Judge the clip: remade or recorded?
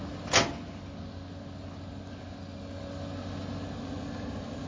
recorded